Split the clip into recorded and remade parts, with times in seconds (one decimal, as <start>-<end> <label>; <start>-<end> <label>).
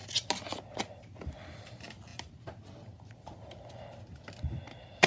0.0-5.1 recorded